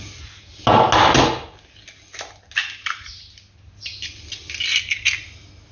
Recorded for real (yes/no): yes